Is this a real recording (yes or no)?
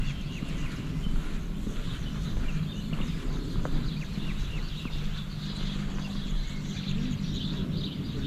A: yes